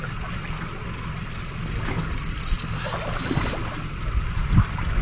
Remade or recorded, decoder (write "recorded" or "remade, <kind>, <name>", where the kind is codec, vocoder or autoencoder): recorded